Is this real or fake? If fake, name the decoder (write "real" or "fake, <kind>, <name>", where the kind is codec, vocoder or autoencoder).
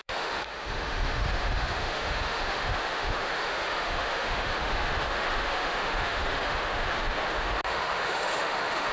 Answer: fake, autoencoder, DAC-VAE